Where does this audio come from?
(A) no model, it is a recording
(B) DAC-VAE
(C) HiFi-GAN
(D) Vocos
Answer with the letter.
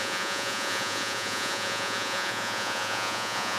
D